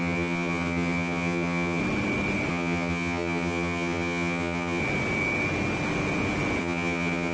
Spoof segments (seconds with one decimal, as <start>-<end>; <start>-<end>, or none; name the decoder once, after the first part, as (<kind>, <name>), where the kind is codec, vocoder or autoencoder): 0.0-1.8 (vocoder, HiFi-GAN); 2.5-4.8; 6.6-7.3